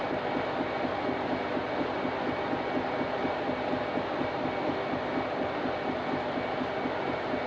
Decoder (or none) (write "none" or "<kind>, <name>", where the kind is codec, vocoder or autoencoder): none